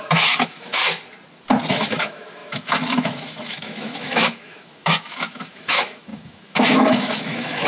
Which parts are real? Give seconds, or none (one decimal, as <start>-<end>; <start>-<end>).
0.8-1.7